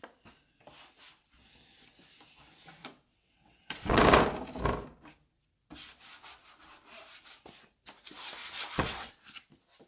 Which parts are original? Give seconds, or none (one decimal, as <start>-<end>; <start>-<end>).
0.0-2.8; 4.0-8.4; 9.1-9.9

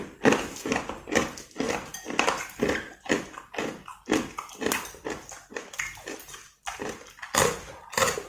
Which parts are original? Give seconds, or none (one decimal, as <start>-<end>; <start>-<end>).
0.0-8.3